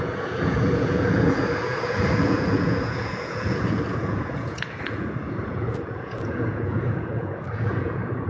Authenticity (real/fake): fake